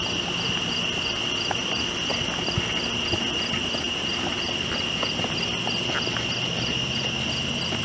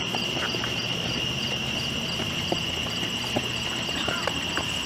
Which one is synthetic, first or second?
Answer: second